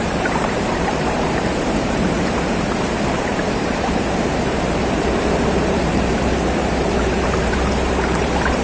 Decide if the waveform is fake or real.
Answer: fake